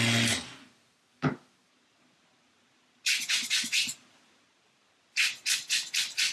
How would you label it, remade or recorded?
recorded